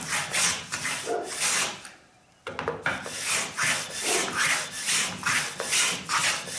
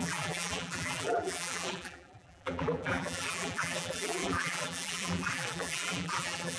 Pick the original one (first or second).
first